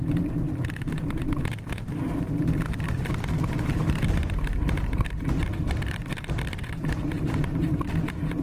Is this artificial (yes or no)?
yes